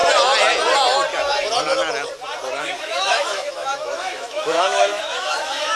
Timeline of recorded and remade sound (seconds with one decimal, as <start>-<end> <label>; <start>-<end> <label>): 0.0-2.6 recorded; 2.6-5.8 remade